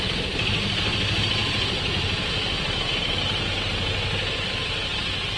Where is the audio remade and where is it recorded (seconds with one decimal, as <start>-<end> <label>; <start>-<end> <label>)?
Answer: 0.0-2.4 recorded; 2.4-3.7 remade; 3.7-5.4 recorded